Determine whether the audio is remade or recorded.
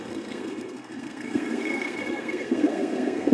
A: remade